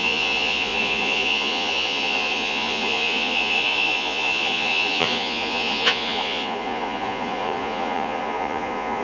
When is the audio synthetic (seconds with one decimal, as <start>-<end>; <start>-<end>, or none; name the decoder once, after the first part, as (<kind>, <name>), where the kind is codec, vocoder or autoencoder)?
0.0-9.0 (vocoder, Vocos)